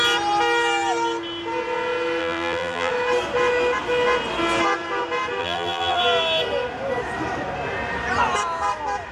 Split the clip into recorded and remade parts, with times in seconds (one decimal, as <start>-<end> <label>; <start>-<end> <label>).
0.0-2.2 recorded; 2.2-2.9 remade; 2.9-5.4 recorded; 5.4-6.0 remade; 6.0-9.1 recorded